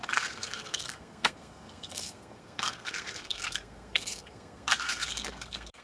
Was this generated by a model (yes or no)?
yes